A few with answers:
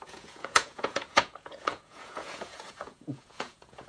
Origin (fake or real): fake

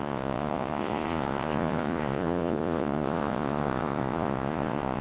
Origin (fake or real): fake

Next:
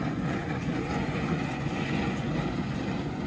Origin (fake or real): fake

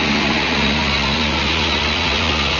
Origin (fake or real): fake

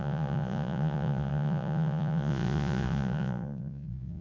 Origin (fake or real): fake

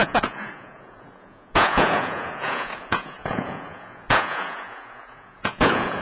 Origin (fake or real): fake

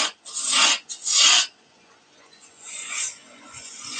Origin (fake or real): fake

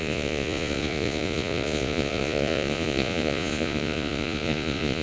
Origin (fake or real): fake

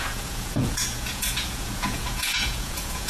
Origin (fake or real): fake